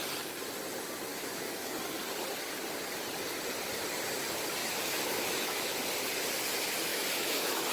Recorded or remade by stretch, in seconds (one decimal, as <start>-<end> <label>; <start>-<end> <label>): 0.0-1.1 recorded; 1.1-1.7 remade; 1.7-4.6 recorded; 4.6-5.7 remade; 5.7-6.9 recorded; 6.9-7.7 remade